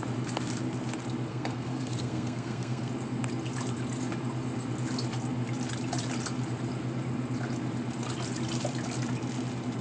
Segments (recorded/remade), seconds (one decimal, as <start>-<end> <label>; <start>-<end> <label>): 0.0-1.3 recorded; 1.3-2.9 remade; 2.9-9.8 recorded